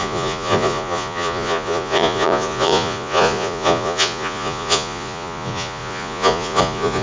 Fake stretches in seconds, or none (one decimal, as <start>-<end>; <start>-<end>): 0.0-7.0